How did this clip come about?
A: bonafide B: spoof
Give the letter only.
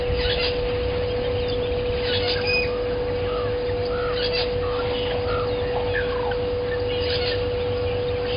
A